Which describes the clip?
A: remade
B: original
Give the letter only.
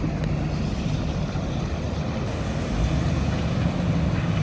B